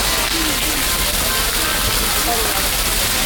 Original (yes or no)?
yes